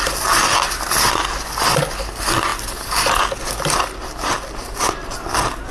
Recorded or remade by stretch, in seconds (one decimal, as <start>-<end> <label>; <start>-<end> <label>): 0.0-5.7 recorded